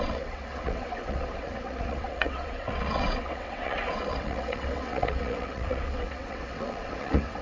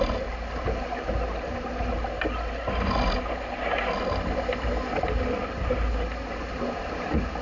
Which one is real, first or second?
second